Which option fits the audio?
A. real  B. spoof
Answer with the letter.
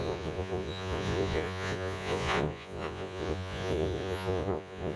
B